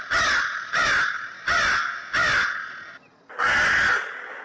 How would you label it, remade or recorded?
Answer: recorded